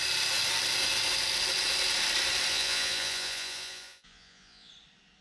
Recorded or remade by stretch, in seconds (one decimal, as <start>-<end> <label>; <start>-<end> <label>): 0.0-2.5 recorded; 2.5-4.7 remade; 4.7-5.2 recorded

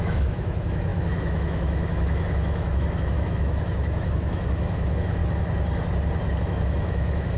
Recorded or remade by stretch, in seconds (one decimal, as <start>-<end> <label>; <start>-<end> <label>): 0.0-5.2 remade; 5.2-6.4 recorded; 6.4-7.4 remade

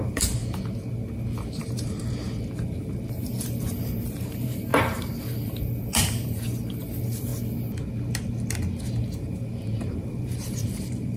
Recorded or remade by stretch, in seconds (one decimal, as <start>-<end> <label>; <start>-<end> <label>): 0.0-0.4 remade; 0.4-1.5 recorded; 1.5-7.3 remade; 7.3-9.2 recorded; 9.2-11.2 remade

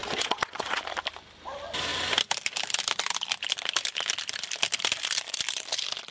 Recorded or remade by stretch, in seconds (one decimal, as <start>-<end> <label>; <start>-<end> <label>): 0.0-0.8 remade; 0.8-6.1 recorded

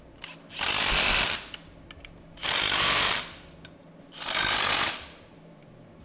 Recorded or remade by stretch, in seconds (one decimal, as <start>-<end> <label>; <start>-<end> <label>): 0.0-6.0 recorded